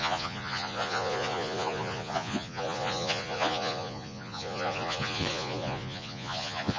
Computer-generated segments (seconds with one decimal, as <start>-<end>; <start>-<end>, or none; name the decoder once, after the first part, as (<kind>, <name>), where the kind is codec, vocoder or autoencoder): 0.0-6.8 (vocoder, Vocos)